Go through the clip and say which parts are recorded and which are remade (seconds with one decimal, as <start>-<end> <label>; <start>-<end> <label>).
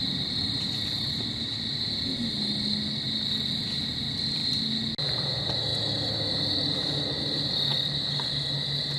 0.0-9.0 recorded